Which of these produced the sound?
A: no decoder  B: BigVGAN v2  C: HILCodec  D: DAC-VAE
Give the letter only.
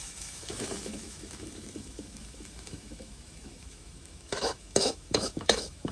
D